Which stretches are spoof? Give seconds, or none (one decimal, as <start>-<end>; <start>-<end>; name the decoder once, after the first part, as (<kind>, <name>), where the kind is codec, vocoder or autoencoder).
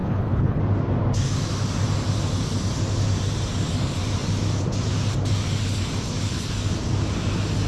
0.0-0.6 (codec, HILCodec)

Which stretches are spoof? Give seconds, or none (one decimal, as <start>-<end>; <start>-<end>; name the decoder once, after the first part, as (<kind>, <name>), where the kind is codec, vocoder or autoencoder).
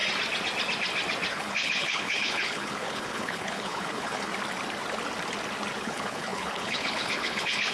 1.3-4.3 (codec, HILCodec); 5.8-7.7